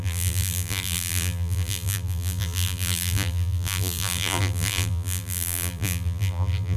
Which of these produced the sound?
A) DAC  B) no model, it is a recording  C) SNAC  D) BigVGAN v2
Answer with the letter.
D